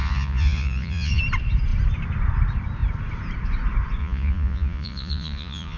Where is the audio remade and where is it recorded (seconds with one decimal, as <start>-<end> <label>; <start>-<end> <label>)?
0.0-1.2 remade; 1.2-4.0 recorded; 4.0-5.8 remade